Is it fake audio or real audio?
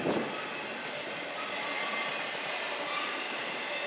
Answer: real